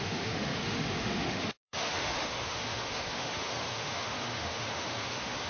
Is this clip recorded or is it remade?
remade